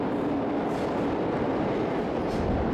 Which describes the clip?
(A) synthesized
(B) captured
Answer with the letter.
B